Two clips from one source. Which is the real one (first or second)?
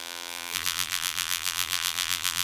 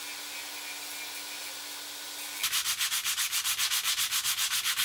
second